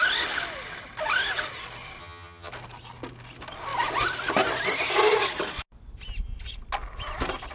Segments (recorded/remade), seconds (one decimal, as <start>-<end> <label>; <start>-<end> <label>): 0.0-2.0 recorded; 2.0-2.5 remade; 2.5-7.5 recorded